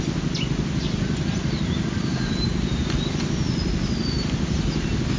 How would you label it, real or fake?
real